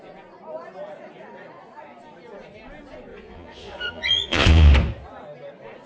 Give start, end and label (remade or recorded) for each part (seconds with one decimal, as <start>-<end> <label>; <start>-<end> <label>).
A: 0.0-3.1 recorded; 3.1-4.7 remade; 4.7-5.9 recorded